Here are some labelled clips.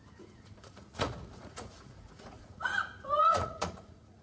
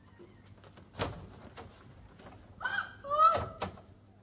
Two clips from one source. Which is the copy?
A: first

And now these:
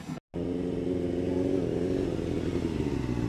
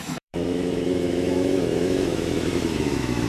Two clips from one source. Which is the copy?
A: second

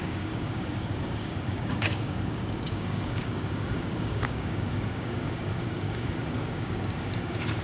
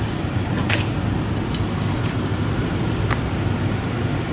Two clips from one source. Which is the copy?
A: first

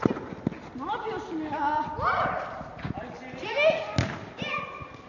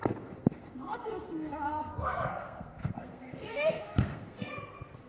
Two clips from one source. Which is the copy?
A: second